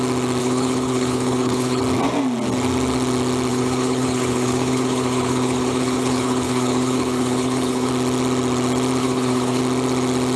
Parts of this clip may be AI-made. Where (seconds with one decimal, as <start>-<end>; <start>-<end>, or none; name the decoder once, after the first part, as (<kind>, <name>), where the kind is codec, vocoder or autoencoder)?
0.4-1.8 (codec, HILCodec); 3.5-7.9; 9.0-9.6

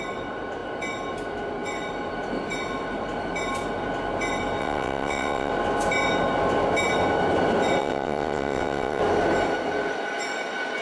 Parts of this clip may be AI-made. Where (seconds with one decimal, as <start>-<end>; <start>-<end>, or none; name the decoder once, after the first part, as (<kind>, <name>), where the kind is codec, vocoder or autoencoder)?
4.6-5.5 (vocoder, WaveNeXt); 7.8-9.0

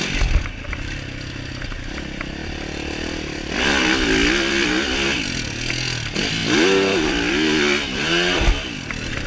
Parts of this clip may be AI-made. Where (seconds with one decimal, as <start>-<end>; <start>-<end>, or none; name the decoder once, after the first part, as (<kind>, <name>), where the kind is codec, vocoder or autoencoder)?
2.4-4.7 (vocoder, BigVGAN v2); 6.4-7.3

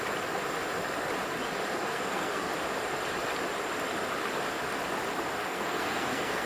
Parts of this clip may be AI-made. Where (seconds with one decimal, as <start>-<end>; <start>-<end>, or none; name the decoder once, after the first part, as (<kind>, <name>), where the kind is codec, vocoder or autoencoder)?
1.8-2.5 (codec, SNAC); 5.4-6.5